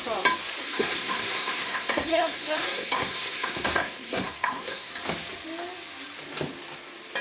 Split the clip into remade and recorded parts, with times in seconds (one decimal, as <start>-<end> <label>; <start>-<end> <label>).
0.0-0.6 recorded; 0.6-4.9 remade; 4.9-7.2 recorded